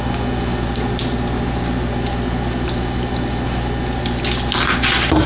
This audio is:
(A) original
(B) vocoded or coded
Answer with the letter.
A